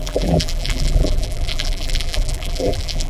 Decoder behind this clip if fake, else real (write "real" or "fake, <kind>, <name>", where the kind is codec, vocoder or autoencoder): fake, vocoder, BigVGAN v2